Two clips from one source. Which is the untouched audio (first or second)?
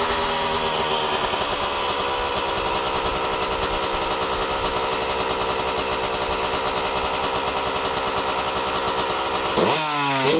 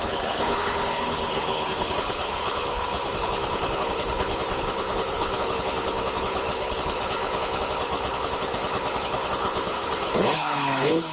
first